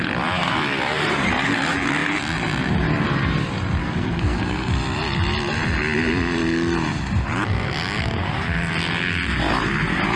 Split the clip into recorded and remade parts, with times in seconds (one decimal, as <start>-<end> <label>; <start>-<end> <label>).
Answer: 0.0-3.8 recorded; 3.8-4.7 remade; 4.7-10.2 recorded